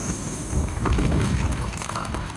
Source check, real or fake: fake